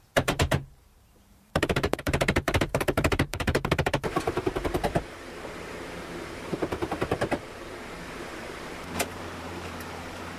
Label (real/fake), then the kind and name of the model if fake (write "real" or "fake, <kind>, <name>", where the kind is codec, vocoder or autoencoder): fake, vocoder, BigVGAN v2